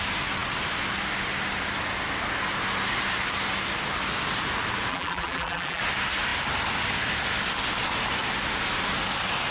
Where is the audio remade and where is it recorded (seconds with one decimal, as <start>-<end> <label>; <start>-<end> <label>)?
0.0-4.9 recorded; 4.9-5.8 remade; 5.8-9.5 recorded